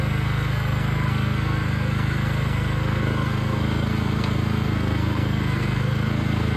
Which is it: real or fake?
fake